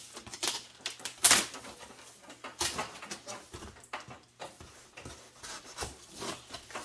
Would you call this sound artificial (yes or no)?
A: no